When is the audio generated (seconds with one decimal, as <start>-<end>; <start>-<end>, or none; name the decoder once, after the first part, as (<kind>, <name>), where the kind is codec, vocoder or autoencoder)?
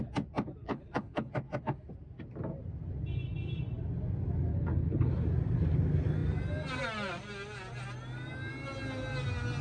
0.6-1.3 (codec, HILCodec); 4.5-5.1